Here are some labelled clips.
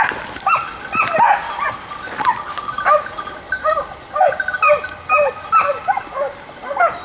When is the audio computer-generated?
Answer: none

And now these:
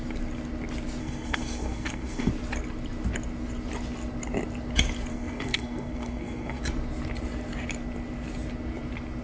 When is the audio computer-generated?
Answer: 1.0-2.3 (codec, SNAC); 5.1-6.6

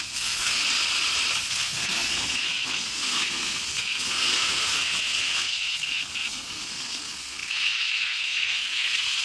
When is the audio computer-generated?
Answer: 0.0-0.6 (codec, SNAC); 1.5-9.2

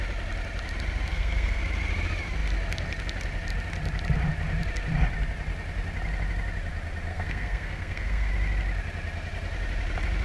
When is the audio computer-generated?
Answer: 1.1-1.6 (codec, SNAC); 7.1-8.3